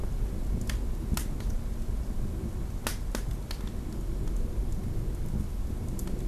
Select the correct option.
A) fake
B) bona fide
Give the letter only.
B